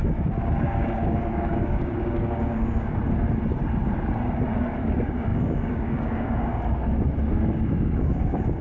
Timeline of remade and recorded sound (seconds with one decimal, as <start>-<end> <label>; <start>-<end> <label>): 0.0-0.6 recorded; 0.6-3.0 remade; 3.0-4.8 recorded; 4.8-6.5 remade; 6.5-7.4 recorded; 7.4-8.6 remade